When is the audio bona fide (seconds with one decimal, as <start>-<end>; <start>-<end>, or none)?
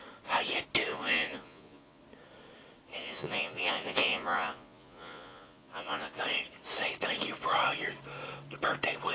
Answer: 0.0-0.9; 2.0-3.0; 6.2-9.1